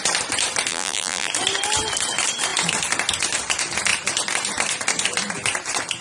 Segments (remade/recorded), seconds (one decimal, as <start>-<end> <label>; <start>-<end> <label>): 0.0-0.7 recorded; 0.7-1.3 remade; 1.3-6.0 recorded